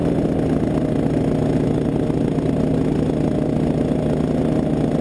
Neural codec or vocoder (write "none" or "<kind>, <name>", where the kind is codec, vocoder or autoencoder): none